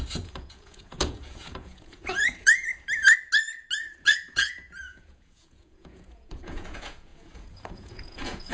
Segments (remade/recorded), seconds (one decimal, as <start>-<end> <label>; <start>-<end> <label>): 0.0-2.7 remade; 2.7-4.0 recorded; 4.0-8.5 remade